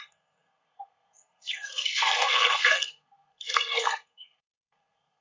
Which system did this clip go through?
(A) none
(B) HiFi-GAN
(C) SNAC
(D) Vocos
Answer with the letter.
C